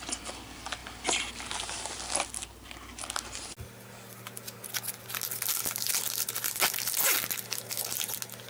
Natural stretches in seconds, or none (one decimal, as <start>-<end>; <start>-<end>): 0.0-8.5